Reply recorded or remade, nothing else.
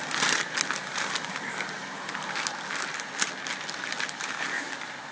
recorded